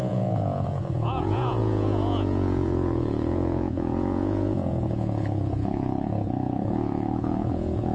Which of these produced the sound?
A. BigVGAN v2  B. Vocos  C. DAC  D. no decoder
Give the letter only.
B